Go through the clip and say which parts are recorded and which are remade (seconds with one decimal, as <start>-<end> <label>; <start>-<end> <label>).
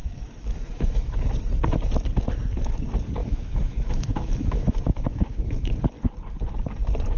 0.0-1.3 remade; 1.3-3.2 recorded; 3.2-5.7 remade; 5.7-7.2 recorded